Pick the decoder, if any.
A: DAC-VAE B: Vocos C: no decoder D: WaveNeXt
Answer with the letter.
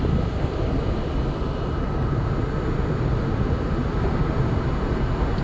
C